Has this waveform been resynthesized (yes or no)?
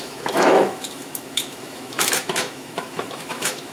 yes